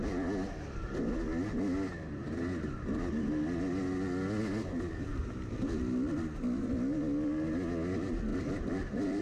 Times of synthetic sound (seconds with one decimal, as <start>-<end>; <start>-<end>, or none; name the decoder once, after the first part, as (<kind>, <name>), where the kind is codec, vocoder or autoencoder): 5.1-5.7 (vocoder, BigVGAN v2); 8.3-9.2